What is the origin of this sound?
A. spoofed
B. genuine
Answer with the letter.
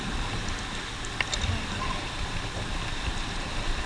B